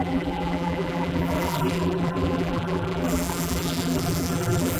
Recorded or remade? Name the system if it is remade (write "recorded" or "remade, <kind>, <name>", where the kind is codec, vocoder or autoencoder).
remade, vocoder, BigVGAN v2